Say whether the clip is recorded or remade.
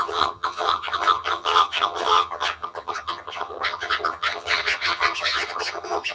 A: remade